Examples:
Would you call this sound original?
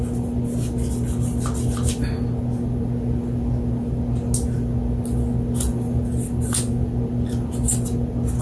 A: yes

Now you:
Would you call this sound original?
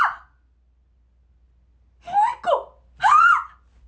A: yes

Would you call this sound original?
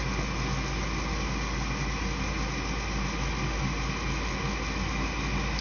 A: yes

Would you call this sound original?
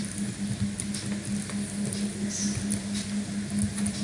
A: yes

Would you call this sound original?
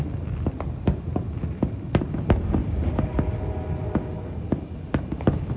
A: yes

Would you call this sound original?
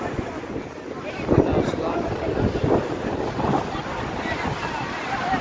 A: yes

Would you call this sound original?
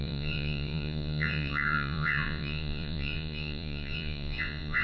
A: no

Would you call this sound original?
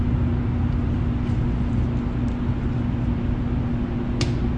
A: yes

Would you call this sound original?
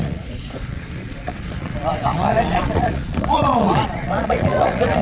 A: no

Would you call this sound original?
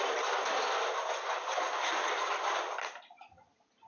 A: yes